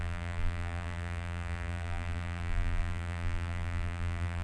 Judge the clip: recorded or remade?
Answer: remade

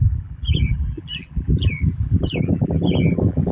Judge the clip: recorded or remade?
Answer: remade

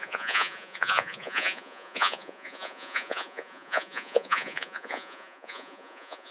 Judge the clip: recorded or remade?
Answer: remade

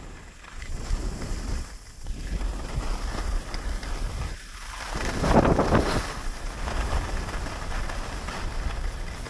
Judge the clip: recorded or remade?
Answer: recorded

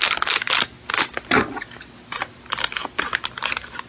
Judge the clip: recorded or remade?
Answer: recorded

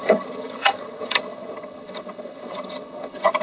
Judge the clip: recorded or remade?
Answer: remade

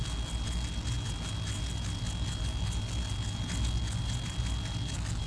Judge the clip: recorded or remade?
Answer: recorded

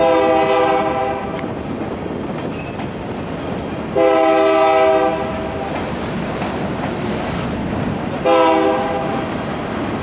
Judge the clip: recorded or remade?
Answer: recorded